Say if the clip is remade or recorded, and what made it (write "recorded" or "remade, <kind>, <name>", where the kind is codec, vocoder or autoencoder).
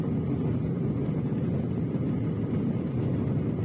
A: recorded